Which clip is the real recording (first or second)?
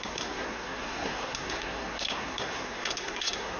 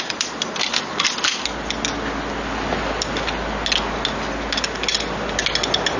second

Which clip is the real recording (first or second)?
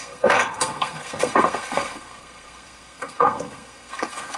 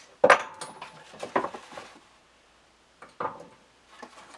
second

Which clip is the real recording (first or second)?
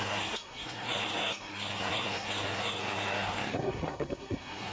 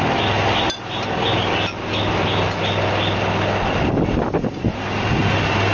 second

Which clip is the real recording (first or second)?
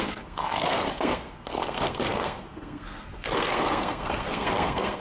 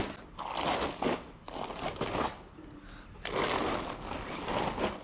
second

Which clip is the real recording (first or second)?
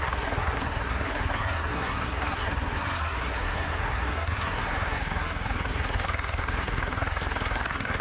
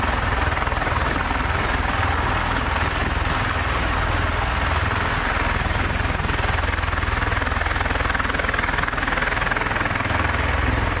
second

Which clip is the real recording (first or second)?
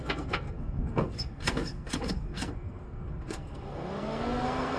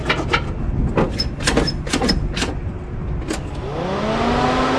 second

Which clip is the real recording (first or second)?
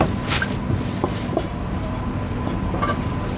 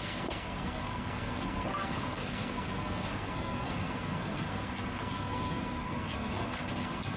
first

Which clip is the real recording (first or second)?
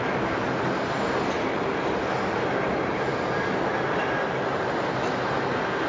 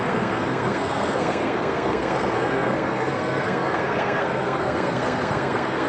first